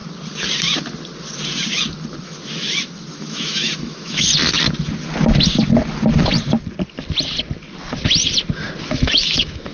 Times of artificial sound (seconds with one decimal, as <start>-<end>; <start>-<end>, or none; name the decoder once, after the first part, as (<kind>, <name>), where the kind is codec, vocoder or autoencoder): 2.2-4.3 (autoencoder, DAC-VAE); 8.8-9.7